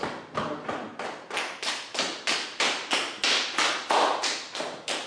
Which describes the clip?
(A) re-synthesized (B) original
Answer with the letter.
B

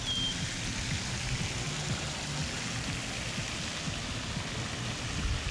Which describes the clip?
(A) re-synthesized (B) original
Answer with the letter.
B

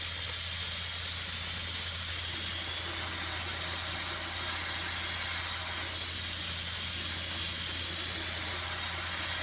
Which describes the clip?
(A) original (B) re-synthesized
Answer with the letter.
A